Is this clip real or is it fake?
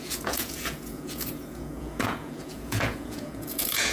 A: fake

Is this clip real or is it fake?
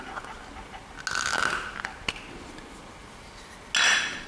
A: real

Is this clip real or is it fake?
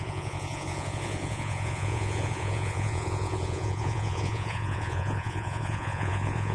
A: fake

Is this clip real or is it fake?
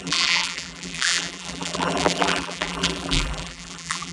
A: fake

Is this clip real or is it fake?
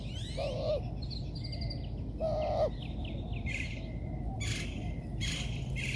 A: real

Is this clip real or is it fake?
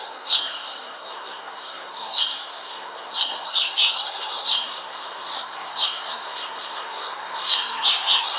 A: fake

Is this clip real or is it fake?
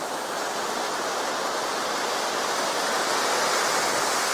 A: real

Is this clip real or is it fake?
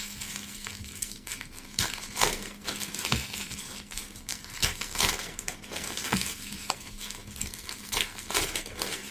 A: fake